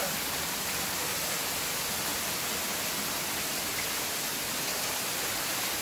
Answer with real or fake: real